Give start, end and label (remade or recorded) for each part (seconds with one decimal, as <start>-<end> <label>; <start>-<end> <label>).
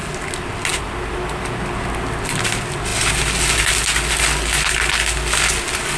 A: 0.0-6.0 recorded